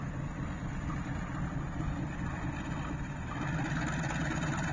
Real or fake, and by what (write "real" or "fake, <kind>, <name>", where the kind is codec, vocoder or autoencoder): real